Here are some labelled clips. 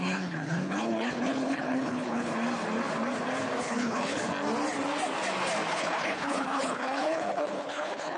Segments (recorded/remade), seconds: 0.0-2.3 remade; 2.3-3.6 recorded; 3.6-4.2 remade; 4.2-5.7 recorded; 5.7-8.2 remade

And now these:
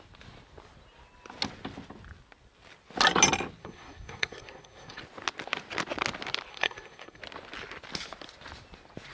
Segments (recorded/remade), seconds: 0.0-3.6 recorded; 3.6-5.0 remade; 5.0-6.5 recorded; 6.5-7.2 remade; 7.2-9.1 recorded

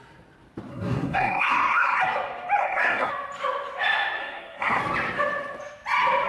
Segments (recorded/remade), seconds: 0.0-0.7 recorded; 0.7-2.0 remade; 2.0-2.6 recorded; 2.6-3.1 remade; 3.1-4.2 recorded; 4.2-4.8 remade; 4.8-6.3 recorded

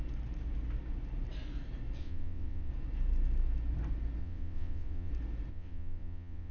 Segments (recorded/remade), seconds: 0.0-2.0 recorded; 2.0-2.7 remade; 2.7-4.2 recorded; 4.2-5.1 remade; 5.1-5.5 recorded; 5.5-6.5 remade

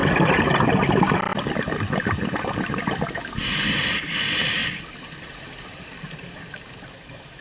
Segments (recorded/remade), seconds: 0.0-7.4 recorded